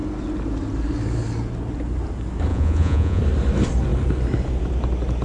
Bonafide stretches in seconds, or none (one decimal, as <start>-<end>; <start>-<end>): 0.0-2.5; 3.2-5.2